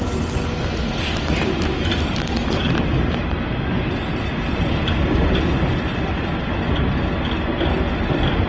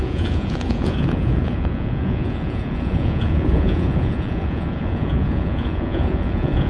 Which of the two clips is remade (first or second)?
second